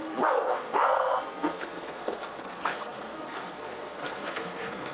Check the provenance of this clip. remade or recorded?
remade